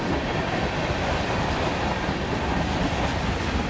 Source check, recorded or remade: recorded